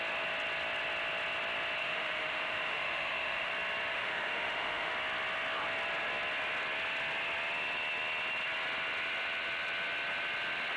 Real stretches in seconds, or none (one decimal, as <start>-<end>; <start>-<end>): 0.0-1.8; 3.5-3.9; 4.9-10.8